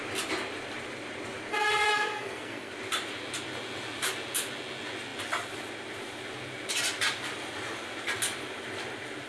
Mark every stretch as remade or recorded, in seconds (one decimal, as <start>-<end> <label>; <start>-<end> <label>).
0.0-1.5 recorded; 1.5-2.7 remade; 2.7-9.3 recorded